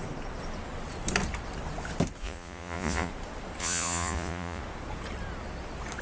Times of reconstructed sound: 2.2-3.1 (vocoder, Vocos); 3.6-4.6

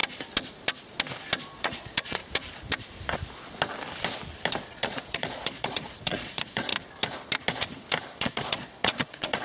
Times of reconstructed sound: 1.4-2.2 (vocoder, Vocos); 4.7-6.7; 8.2-9.4

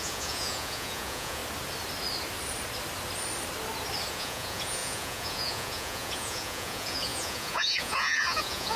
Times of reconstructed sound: 0.0-1.4 (vocoder, Vocos); 4.1-8.8